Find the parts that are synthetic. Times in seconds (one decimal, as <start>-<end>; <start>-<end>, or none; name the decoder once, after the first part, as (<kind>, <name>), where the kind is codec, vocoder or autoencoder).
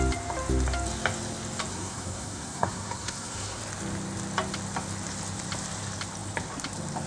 1.7-3.6 (codec, SNAC)